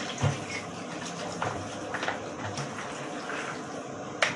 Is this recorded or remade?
recorded